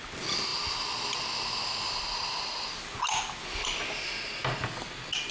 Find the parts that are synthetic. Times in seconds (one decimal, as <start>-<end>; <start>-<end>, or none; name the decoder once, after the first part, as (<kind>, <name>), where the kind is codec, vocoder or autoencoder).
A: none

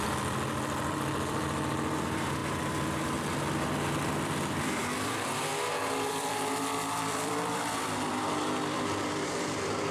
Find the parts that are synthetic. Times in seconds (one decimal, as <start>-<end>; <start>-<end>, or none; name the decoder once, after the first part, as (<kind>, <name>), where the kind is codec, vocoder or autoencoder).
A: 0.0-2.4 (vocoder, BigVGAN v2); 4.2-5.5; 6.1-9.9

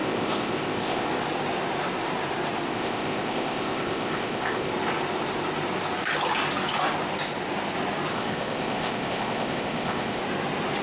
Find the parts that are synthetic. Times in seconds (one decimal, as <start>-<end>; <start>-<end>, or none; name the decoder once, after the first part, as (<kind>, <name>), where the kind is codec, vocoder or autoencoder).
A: 0.0-1.1 (codec, ZipCodec); 2.7-4.7; 8.1-10.2

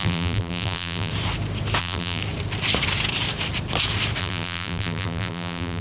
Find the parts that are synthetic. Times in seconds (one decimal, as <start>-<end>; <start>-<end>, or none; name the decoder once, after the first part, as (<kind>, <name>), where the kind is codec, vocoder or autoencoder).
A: 0.0-1.1 (vocoder, BigVGAN v2); 1.8-2.2; 4.2-5.8

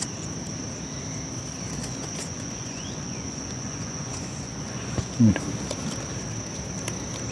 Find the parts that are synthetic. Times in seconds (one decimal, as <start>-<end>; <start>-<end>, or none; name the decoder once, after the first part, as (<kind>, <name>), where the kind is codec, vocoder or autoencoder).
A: 1.8-5.3 (vocoder, Vocos)

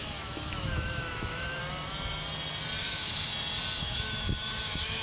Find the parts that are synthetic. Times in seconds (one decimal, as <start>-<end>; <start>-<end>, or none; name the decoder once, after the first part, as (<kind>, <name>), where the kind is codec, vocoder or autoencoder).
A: 0.0-1.6 (autoencoder, DAC-VAE); 2.8-3.3; 3.8-5.0

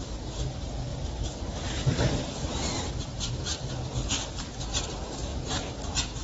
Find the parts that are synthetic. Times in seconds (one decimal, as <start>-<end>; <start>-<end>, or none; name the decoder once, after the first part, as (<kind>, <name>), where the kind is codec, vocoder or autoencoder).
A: 0.9-3.7 (vocoder, BigVGAN v2)